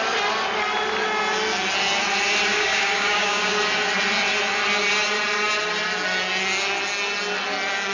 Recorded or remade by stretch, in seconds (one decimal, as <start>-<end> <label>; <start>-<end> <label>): 0.0-2.5 recorded; 2.5-3.5 remade; 3.5-7.9 recorded